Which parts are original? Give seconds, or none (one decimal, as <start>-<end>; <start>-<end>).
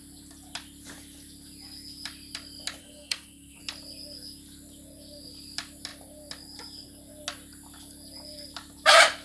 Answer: 0.0-2.8; 3.6-9.2